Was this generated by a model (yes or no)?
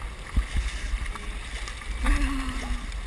no